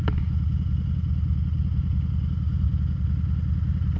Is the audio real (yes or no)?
yes